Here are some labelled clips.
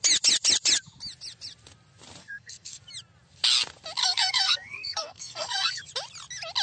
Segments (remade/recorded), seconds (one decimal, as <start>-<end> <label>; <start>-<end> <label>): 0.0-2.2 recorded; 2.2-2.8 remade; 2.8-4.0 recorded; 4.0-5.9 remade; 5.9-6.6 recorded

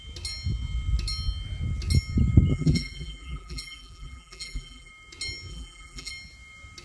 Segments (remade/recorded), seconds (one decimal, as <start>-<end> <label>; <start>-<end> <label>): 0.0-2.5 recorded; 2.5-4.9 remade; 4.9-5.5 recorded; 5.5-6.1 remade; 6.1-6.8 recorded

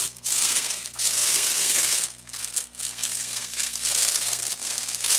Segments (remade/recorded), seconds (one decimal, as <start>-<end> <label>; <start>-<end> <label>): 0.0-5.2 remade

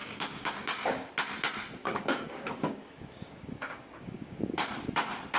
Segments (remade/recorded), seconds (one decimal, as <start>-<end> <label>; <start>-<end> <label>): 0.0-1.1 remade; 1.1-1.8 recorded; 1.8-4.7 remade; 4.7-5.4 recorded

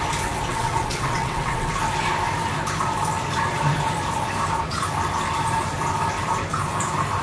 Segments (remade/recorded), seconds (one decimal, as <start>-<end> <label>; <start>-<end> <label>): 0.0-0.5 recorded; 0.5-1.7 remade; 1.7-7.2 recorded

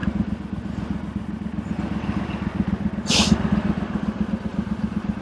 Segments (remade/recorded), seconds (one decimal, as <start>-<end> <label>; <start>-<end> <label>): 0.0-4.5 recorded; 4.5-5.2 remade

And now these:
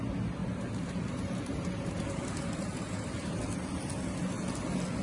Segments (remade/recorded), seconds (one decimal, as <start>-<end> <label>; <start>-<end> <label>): 0.0-0.4 recorded; 0.4-3.4 remade; 3.4-5.0 recorded

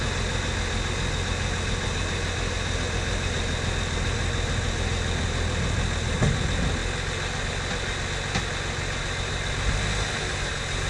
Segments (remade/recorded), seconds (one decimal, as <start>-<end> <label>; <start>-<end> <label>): 0.0-10.9 recorded